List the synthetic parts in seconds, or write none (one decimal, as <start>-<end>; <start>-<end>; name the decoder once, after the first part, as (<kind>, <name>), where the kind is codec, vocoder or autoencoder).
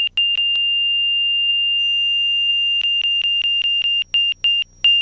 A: none